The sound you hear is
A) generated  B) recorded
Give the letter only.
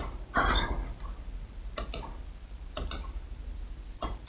B